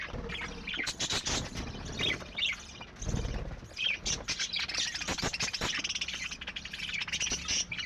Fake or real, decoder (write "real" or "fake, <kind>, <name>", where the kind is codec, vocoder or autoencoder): real